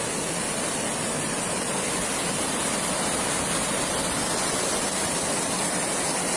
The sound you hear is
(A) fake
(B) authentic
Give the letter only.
B